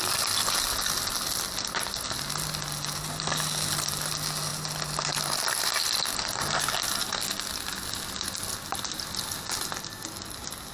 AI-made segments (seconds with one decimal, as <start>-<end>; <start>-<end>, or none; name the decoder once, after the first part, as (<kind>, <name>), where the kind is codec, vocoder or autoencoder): none

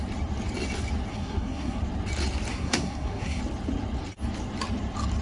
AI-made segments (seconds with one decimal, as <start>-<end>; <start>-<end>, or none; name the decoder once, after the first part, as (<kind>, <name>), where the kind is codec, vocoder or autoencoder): 1.1-1.8 (codec, SNAC); 2.5-3.4

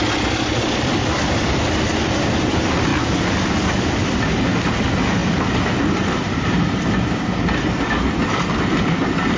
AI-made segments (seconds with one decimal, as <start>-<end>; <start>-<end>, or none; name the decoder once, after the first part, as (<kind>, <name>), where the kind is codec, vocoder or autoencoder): none

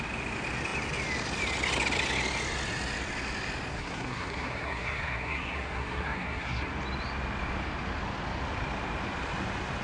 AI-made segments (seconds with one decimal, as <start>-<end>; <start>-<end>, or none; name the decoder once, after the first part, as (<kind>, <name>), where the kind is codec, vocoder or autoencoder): 3.7-6.7 (codec, SNAC)

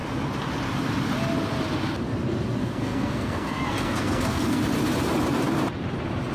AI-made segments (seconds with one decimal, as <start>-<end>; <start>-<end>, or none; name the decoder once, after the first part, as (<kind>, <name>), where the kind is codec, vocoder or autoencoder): 2.6-4.6 (codec, SNAC)

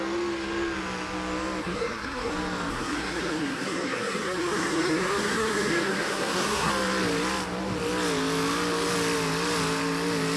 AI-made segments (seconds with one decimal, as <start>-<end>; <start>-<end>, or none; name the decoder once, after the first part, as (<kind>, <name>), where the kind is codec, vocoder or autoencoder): 1.6-2.3 (codec, SNAC); 2.7-6.7

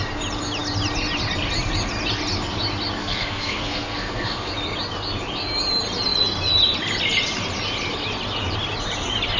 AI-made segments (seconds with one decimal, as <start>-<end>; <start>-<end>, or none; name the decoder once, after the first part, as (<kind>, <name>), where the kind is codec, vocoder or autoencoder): 3.0-4.5 (codec, SNAC)